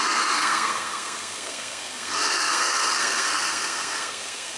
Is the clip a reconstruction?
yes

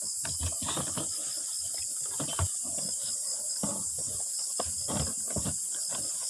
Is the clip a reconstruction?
no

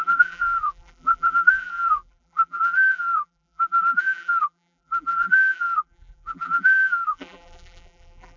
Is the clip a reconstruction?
yes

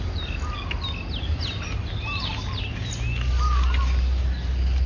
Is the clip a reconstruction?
no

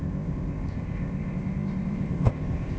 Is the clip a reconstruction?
yes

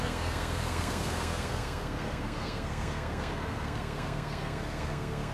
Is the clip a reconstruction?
yes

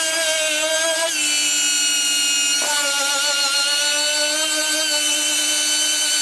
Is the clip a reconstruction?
no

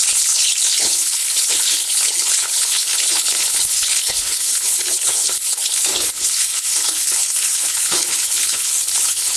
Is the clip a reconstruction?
yes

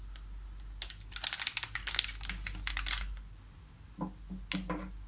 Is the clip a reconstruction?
no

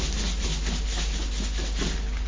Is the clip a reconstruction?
no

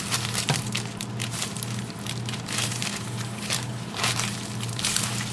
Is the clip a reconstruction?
yes